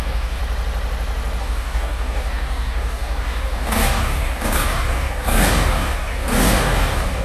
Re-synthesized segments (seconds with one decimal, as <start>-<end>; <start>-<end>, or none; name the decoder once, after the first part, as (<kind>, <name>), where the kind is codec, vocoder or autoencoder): 0.0-0.4 (codec, DAC); 1.4-7.2